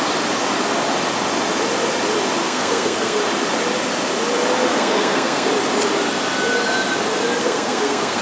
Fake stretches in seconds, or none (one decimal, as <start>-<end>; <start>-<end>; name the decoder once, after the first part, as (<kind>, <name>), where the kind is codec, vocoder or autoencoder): 2.4-3.2 (codec, SNAC); 4.7-5.5; 7.4-8.2